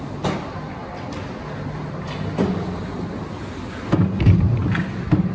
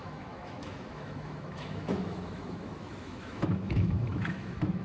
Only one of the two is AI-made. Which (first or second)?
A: second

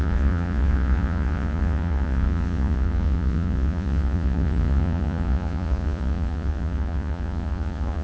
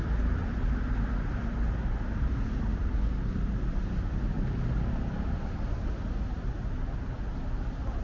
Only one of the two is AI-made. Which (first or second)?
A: first